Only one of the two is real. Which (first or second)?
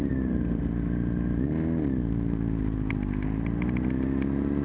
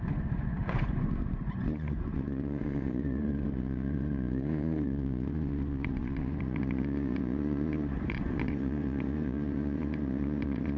first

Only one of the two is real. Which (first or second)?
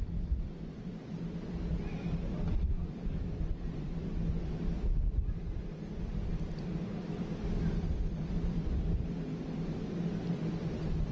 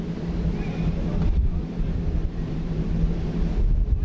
second